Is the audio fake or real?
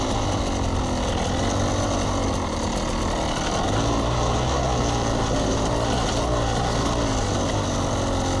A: real